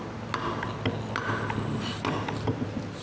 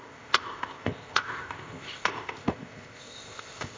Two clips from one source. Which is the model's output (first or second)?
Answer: second